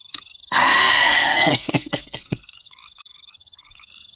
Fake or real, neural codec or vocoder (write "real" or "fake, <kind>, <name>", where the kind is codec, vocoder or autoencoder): fake, codec, SNAC